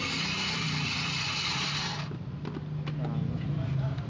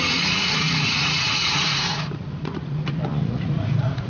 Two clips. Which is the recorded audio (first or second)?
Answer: first